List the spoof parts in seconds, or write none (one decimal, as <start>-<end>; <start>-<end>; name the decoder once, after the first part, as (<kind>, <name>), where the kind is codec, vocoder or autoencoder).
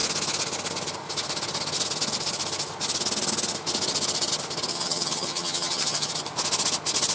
4.7-6.1 (vocoder, HiFi-GAN)